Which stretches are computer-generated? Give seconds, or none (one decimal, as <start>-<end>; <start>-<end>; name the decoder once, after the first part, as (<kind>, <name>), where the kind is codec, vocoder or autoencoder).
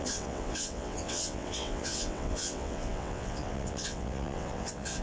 0.0-5.0 (vocoder, WaveNeXt)